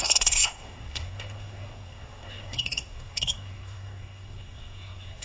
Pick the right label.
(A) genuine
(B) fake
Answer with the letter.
B